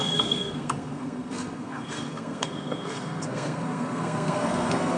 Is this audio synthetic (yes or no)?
yes